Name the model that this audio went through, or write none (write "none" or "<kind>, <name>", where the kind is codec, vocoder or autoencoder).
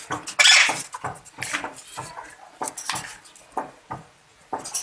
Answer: none